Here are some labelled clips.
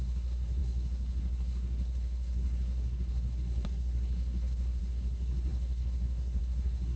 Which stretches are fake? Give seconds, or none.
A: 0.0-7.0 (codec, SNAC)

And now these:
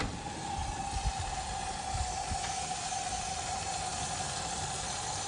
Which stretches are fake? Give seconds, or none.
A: none

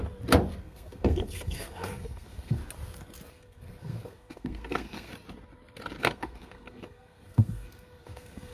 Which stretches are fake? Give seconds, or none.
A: 0.6-2.6 (codec, SNAC); 3.3-5.1; 6.0-8.5

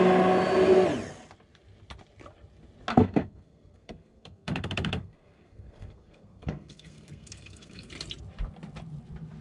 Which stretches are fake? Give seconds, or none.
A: 2.9-7.9 (codec, SNAC)

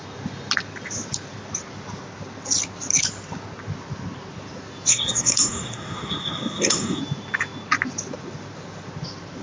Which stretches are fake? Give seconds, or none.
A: 4.9-7.0 (codec, SNAC)

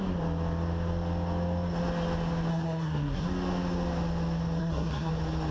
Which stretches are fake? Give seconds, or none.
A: 2.5-3.2 (codec, SNAC); 4.6-5.1

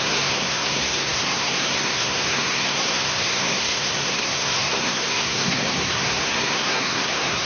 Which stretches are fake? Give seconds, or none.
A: 0.0-7.4 (codec, SNAC)

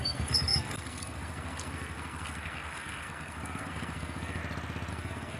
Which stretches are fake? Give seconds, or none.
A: 0.0-4.4 (codec, SNAC); 4.9-5.4